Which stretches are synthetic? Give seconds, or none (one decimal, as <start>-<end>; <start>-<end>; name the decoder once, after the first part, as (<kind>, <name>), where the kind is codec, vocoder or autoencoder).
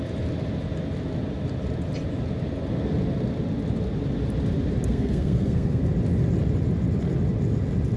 4.9-5.8 (codec, SNAC)